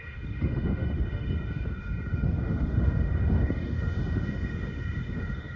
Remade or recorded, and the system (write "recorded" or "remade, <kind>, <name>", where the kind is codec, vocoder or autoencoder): remade, autoencoder, DAC-VAE